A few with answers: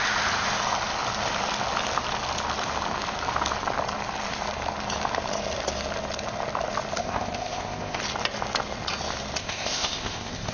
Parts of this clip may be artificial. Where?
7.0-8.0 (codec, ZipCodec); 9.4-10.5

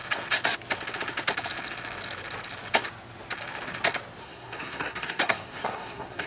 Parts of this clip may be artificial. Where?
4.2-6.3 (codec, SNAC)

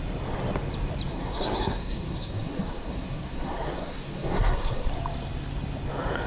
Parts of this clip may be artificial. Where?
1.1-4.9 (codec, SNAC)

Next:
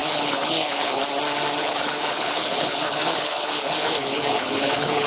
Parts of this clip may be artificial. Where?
0.0-1.0 (codec, HILCodec); 1.6-5.1

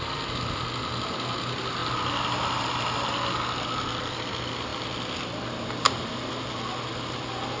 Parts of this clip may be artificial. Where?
none